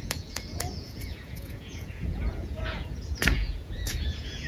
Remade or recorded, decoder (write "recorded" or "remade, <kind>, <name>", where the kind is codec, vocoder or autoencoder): remade, vocoder, Vocos